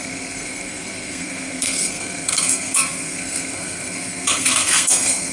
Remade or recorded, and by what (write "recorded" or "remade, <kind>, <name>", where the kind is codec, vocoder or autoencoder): remade, codec, SNAC